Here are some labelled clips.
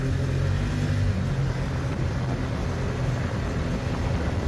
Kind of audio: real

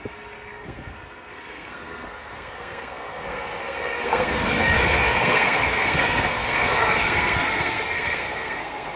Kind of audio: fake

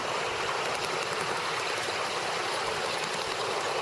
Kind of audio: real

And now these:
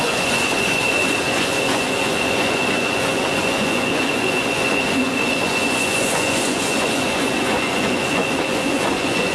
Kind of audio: fake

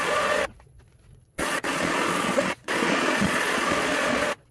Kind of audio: fake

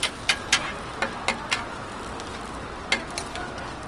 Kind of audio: real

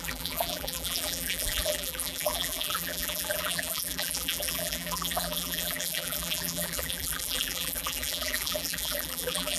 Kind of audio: fake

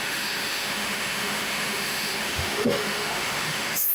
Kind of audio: fake